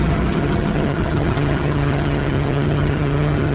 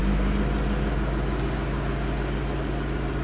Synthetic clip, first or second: first